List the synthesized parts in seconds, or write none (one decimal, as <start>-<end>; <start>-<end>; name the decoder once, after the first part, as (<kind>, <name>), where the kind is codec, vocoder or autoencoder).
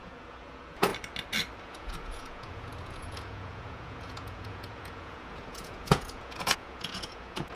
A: 0.0-0.9 (vocoder, Vocos); 1.6-7.6